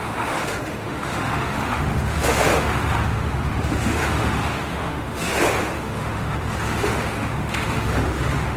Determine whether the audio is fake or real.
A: fake